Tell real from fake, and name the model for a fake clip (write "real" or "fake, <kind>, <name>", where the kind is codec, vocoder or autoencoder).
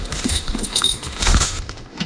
fake, autoencoder, DAC-VAE